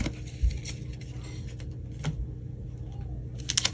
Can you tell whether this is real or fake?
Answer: real